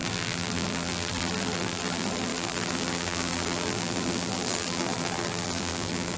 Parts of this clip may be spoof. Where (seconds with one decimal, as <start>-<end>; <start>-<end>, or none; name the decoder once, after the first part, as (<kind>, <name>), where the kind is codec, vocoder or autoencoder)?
0.0-6.2 (vocoder, BigVGAN v2)